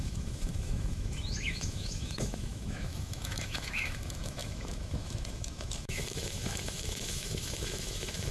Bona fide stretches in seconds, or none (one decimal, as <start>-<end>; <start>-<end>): none